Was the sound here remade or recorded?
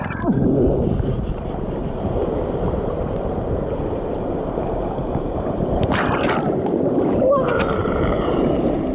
remade